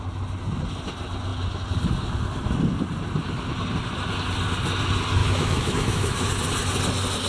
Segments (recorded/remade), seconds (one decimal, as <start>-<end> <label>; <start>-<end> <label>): 0.0-5.2 recorded; 5.2-6.3 remade; 6.3-7.3 recorded